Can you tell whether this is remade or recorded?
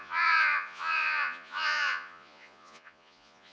remade